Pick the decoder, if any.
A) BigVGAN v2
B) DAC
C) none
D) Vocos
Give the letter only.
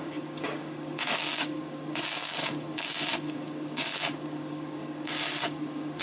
B